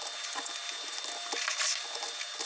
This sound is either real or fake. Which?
real